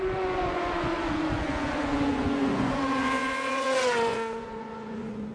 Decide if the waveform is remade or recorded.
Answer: remade